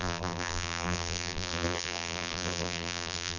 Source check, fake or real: fake